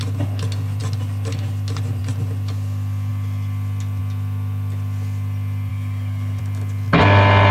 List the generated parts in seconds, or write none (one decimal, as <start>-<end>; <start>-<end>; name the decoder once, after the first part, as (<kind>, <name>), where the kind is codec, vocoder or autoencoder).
5.7-6.4 (codec, DAC)